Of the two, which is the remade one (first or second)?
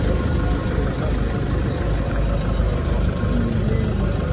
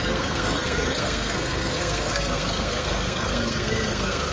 second